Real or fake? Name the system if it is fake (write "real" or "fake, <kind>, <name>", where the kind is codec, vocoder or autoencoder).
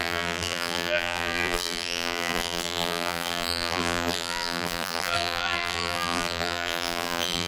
fake, vocoder, BigVGAN v2